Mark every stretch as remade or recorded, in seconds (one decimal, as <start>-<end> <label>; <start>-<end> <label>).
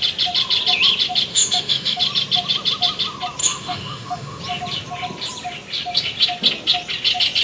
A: 0.0-1.3 recorded; 1.3-2.0 remade; 2.0-3.4 recorded; 3.4-4.4 remade; 4.4-7.4 recorded